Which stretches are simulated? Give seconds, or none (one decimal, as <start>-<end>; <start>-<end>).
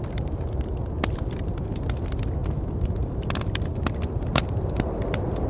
none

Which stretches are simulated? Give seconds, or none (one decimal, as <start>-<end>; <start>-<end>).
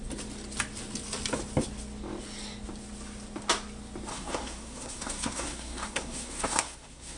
4.1-7.2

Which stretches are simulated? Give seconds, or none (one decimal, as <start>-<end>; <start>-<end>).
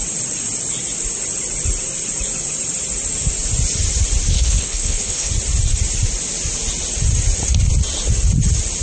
4.3-5.3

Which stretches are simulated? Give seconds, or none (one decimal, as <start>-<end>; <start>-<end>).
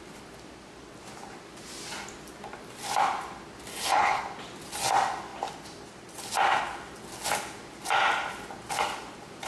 3.7-4.2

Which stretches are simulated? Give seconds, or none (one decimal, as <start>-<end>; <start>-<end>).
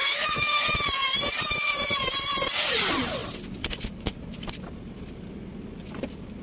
0.0-0.5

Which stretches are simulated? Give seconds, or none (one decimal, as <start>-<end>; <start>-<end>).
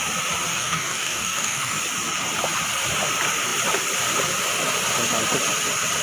0.5-1.8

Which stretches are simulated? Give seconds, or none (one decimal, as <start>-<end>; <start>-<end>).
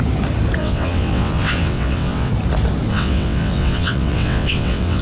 0.6-2.3; 2.9-5.0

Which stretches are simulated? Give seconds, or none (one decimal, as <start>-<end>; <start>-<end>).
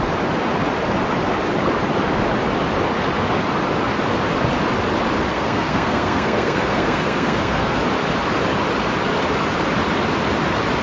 5.3-7.8